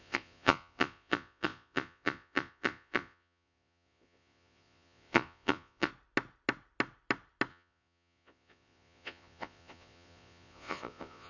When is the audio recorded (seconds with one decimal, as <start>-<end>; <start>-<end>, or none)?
5.9-7.5